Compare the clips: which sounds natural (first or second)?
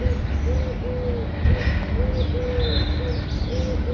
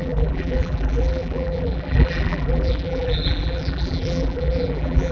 first